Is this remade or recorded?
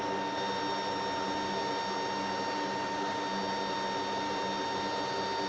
recorded